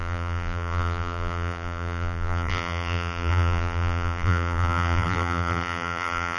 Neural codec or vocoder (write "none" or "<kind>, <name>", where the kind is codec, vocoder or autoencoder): vocoder, BigVGAN v2